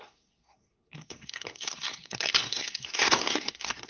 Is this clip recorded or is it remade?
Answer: remade